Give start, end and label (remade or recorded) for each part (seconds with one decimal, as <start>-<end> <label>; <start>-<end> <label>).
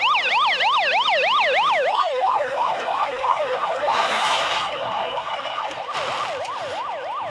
0.0-1.9 recorded; 1.9-5.8 remade; 5.8-7.3 recorded